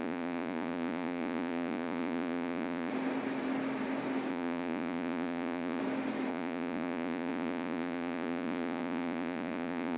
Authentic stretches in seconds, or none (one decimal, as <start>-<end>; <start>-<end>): 2.9-4.3; 5.8-6.3